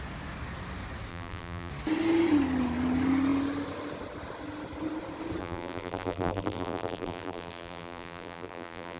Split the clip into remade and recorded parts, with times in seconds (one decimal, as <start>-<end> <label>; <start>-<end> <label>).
0.0-1.1 recorded; 1.1-1.7 remade; 1.7-5.4 recorded; 5.4-9.0 remade